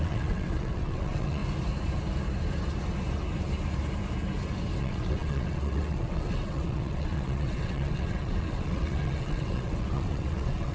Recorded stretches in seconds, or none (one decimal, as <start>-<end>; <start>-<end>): 1.4-4.8